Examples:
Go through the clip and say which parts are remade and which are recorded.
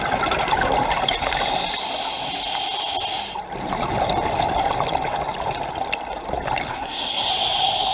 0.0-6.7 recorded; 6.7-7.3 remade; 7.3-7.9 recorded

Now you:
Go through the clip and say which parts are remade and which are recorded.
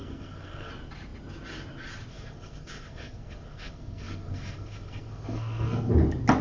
0.0-0.7 remade; 0.7-2.1 recorded; 2.1-5.9 remade; 5.9-6.4 recorded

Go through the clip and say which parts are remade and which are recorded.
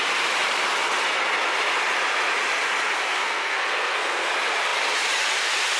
0.0-3.1 recorded; 3.1-4.3 remade; 4.3-5.8 recorded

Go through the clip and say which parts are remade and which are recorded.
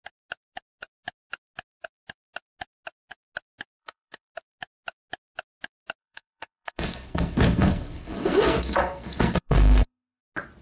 0.0-3.8 recorded; 3.8-4.3 remade; 4.3-6.0 recorded; 6.0-10.2 remade; 10.2-10.6 recorded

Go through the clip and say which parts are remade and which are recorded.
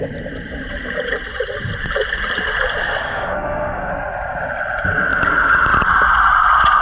0.0-2.8 recorded; 2.8-3.9 remade; 3.9-6.8 recorded